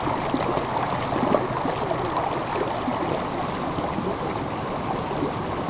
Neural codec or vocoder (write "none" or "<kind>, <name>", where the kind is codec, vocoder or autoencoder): none